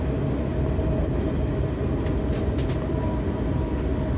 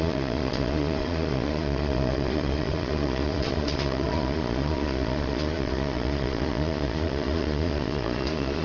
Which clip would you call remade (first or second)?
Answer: second